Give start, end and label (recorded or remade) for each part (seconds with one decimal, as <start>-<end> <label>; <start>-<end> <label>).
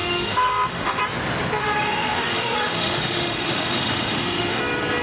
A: 0.0-1.0 remade; 1.0-1.6 recorded; 1.6-4.6 remade; 4.6-5.0 recorded